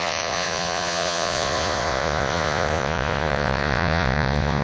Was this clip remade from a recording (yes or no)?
yes